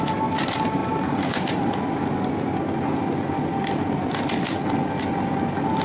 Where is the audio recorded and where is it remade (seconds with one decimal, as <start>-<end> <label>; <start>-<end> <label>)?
0.0-5.8 recorded